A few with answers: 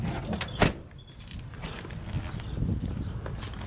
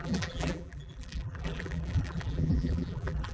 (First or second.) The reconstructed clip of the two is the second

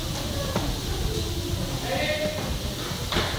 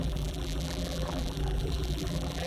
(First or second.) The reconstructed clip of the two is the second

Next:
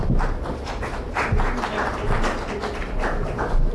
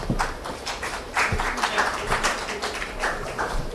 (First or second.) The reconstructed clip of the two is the second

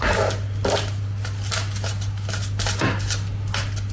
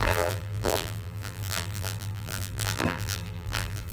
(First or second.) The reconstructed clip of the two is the second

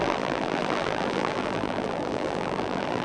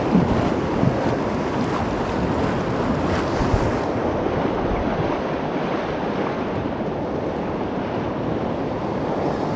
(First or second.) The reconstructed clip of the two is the first